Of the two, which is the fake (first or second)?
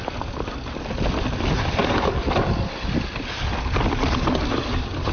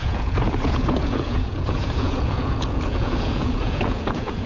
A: second